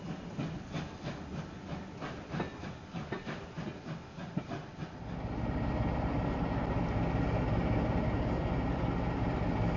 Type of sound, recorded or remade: recorded